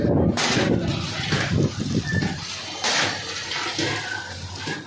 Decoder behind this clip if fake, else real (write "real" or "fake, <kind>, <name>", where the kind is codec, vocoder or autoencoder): real